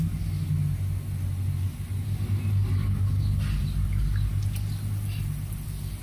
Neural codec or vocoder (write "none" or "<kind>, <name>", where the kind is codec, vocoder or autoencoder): none